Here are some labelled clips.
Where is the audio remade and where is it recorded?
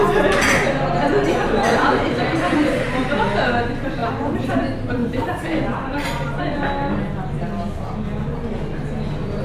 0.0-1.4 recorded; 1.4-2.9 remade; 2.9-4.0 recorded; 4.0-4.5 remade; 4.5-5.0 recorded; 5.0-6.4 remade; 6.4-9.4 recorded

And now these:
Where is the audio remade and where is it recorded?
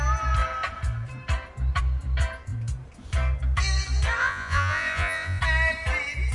0.0-4.2 recorded; 4.2-5.4 remade; 5.4-6.3 recorded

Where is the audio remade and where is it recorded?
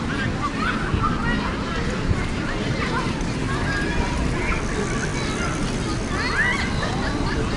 0.0-7.6 recorded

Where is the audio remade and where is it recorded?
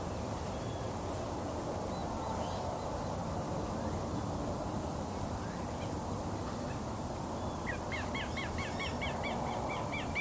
0.0-10.2 recorded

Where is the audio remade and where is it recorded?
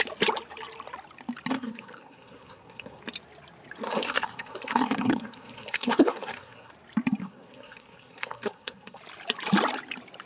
0.0-1.5 recorded; 1.5-3.0 remade; 3.0-3.8 recorded; 3.8-6.7 remade; 6.7-7.2 recorded; 7.2-9.0 remade; 9.0-10.3 recorded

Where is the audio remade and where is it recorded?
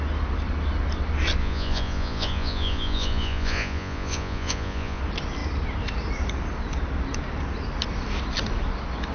0.0-1.4 recorded; 1.4-5.0 remade; 5.0-9.1 recorded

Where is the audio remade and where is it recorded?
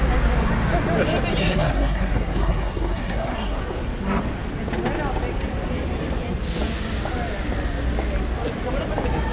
0.0-1.4 recorded; 1.4-3.6 remade; 3.6-9.3 recorded